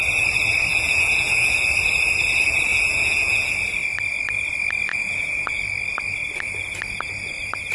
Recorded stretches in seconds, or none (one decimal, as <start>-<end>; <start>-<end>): 0.0-0.7; 1.6-2.7; 3.5-4.9; 5.6-7.7